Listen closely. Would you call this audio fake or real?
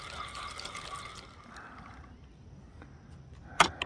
real